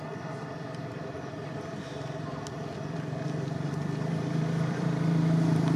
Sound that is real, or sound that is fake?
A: fake